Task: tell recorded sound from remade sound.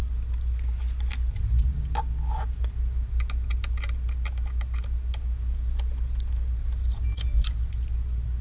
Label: recorded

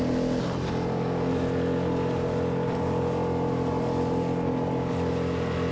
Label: recorded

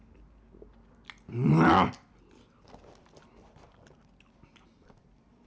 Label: recorded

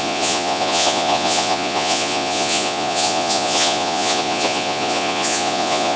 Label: remade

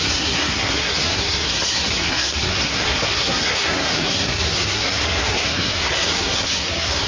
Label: remade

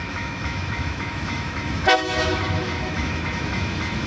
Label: remade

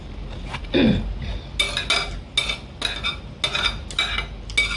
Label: recorded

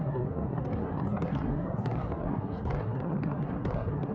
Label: remade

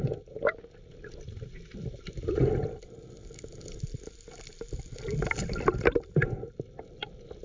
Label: recorded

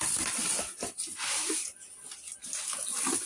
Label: recorded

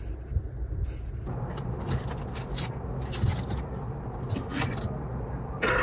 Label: recorded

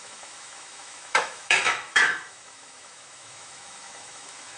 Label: remade